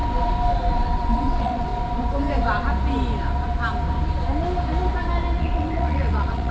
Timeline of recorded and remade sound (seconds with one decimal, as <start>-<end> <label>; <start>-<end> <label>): 0.0-0.7 recorded; 0.7-1.7 remade; 1.7-5.4 recorded; 5.4-6.5 remade